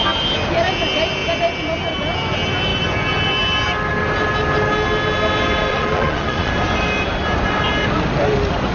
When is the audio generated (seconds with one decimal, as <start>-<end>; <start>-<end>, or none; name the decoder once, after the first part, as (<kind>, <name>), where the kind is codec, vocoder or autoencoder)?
5.7-6.5 (vocoder, Vocos)